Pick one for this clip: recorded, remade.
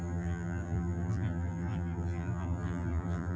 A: remade